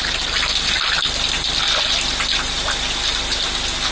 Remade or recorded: recorded